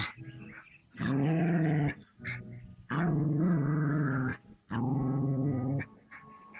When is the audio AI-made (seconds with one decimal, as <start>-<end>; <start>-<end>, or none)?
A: 0.8-1.4